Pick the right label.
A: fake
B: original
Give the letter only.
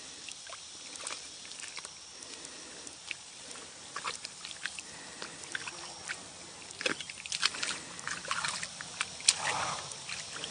B